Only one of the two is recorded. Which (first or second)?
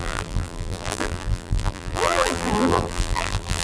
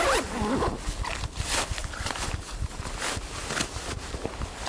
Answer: second